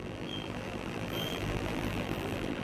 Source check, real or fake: fake